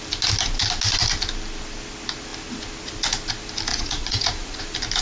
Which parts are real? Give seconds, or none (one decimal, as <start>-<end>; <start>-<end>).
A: 0.0-3.7; 4.6-5.0